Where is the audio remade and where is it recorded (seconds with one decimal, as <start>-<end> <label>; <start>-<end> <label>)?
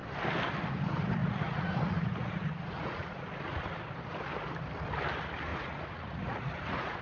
0.0-1.2 recorded; 1.2-3.3 remade; 3.3-5.5 recorded; 5.5-7.0 remade